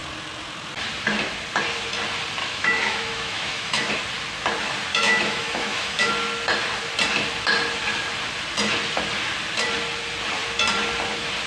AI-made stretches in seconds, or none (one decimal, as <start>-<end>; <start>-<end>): 2.4-3.9; 4.9-6.1